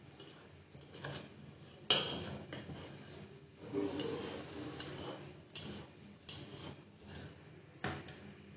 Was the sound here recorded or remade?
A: recorded